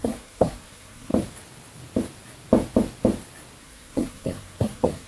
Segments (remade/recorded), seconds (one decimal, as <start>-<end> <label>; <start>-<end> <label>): 0.0-1.1 remade; 1.1-3.6 recorded; 3.6-5.1 remade